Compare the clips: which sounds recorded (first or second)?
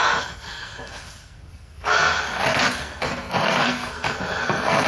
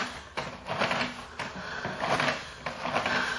second